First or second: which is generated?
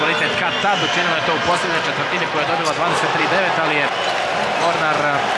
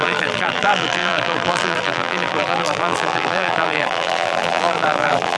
second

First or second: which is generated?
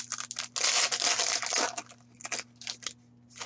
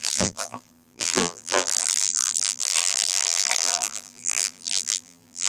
second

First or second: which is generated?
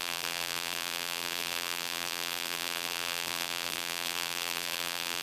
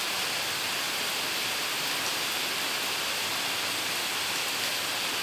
first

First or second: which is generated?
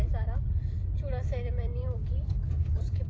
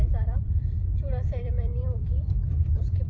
second